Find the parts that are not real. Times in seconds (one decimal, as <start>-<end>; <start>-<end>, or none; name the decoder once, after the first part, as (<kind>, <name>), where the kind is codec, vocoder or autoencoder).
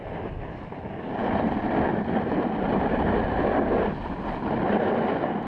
none